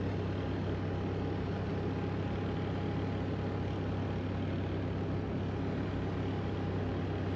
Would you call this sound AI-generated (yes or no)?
no